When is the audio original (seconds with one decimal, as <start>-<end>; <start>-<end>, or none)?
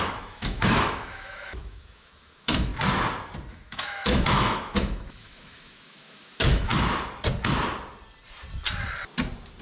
2.7-3.5; 6.7-9.6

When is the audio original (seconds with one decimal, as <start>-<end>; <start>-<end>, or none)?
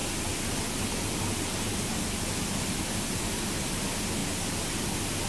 0.0-5.3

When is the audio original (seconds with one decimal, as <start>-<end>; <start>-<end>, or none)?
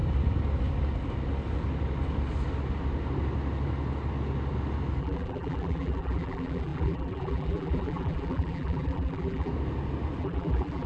0.0-5.0; 9.5-10.2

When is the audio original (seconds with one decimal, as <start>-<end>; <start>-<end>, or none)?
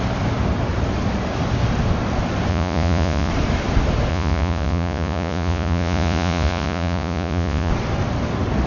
0.0-2.5; 3.3-4.1; 7.7-8.7